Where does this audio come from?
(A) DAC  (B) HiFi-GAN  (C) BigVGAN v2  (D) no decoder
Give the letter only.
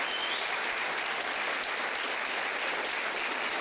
D